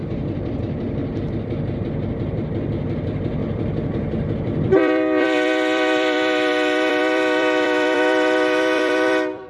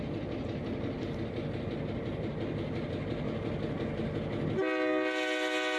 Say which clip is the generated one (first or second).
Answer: first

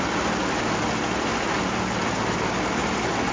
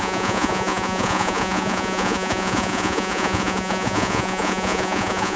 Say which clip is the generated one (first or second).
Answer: second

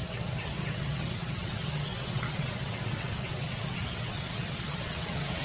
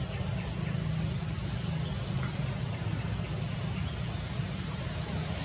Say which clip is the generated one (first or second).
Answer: first